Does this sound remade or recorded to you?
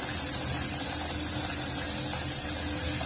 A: recorded